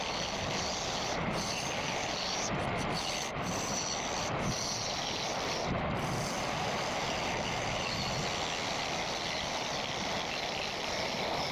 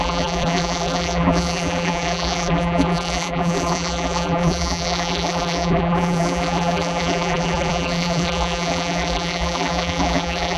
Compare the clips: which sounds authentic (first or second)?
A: first